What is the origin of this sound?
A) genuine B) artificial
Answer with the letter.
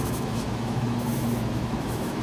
B